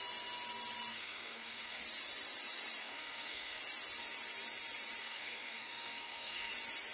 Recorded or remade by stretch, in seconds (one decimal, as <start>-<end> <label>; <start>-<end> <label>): 0.0-0.9 recorded; 0.9-1.8 remade; 1.8-2.8 recorded; 2.8-3.6 remade; 3.6-5.0 recorded; 5.0-6.5 remade; 6.5-6.9 recorded